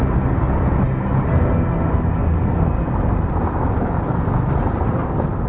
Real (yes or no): yes